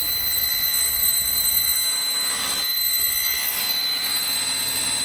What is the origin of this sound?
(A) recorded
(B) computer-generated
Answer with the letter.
B